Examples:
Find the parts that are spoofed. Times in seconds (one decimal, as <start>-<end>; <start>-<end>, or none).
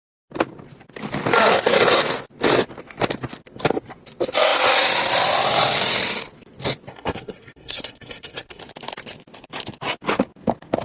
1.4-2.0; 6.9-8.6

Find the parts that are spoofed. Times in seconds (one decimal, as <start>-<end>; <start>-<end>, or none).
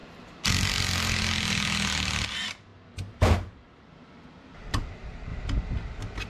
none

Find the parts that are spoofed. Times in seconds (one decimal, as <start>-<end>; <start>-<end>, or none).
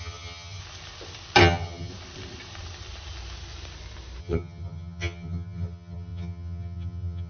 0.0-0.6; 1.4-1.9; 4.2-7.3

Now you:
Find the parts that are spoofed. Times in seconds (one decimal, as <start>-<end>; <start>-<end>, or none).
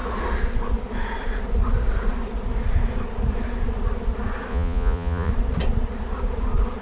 4.5-5.3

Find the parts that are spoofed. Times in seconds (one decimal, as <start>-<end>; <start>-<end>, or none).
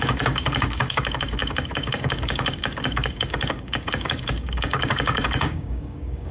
0.0-6.3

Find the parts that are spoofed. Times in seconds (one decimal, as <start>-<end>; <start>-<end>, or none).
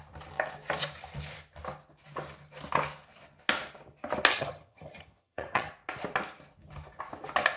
4.3-5.7